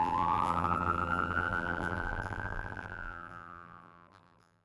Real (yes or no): no